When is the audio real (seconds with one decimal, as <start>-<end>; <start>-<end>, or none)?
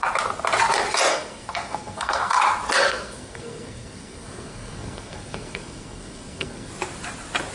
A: 0.0-1.1; 2.4-2.8; 6.7-7.5